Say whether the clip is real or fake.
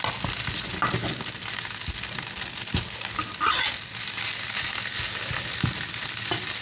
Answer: real